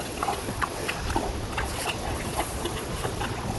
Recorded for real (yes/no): no